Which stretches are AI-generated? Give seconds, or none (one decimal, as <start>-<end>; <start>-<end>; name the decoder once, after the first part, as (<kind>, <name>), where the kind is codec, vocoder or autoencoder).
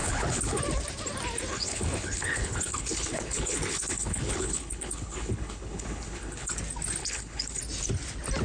0.0-0.6 (codec, HILCodec); 1.5-6.5; 7.0-7.6